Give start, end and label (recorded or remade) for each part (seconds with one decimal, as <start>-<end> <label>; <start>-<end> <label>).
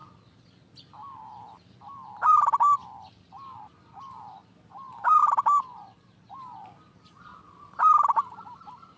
0.0-3.2 recorded; 3.2-5.2 remade; 5.2-6.3 recorded; 6.3-7.3 remade; 7.3-8.2 recorded; 8.2-9.0 remade